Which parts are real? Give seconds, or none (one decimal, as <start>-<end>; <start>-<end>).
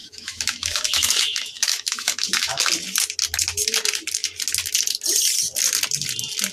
2.7-6.5